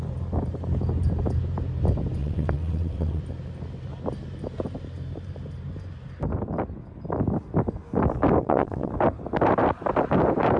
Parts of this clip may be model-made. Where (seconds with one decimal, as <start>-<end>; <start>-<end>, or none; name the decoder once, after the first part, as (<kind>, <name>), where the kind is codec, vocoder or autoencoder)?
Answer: 2.2-3.2 (vocoder, WaveNeXt); 8.4-8.9